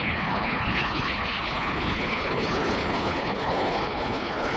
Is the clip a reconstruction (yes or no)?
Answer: yes